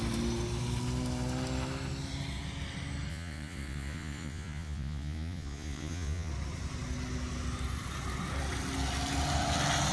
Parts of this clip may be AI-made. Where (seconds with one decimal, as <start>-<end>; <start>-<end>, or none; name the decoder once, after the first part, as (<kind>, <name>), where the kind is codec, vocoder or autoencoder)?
3.1-6.3 (vocoder, Vocos)